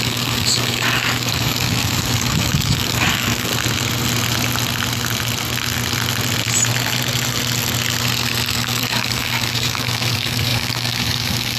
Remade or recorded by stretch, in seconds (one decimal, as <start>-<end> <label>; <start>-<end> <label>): 0.0-3.5 remade; 3.5-8.5 recorded; 8.5-11.6 remade